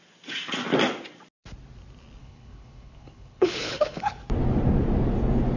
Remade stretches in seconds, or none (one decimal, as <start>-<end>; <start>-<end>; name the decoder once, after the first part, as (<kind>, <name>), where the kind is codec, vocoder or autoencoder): 2.2-4.2 (codec, HILCodec)